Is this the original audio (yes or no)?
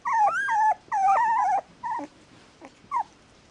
no